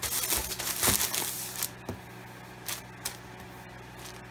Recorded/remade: recorded